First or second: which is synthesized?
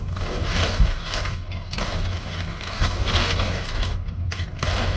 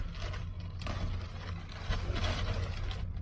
first